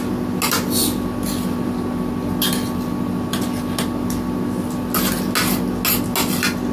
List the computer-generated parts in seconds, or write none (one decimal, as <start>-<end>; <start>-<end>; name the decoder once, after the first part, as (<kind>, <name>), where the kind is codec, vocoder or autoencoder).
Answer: none